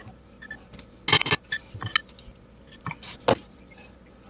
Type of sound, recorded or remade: recorded